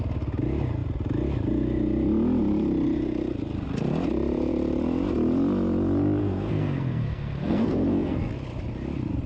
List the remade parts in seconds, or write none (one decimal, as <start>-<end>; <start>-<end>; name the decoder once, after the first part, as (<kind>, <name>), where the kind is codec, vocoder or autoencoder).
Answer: 6.2-8.3 (codec, SNAC)